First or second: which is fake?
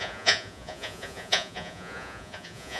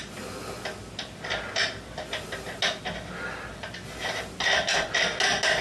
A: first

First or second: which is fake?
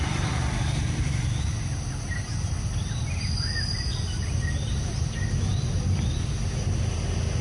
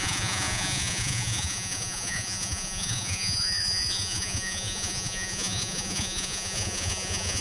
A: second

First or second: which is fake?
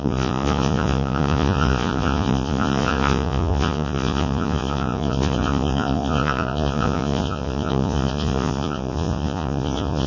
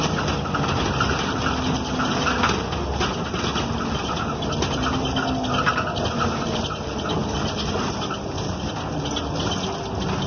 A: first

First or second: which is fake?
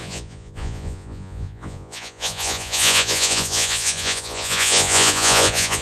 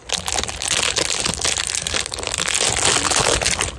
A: first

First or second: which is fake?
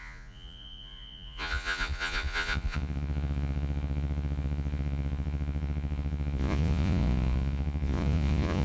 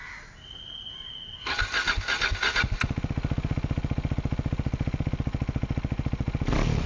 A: first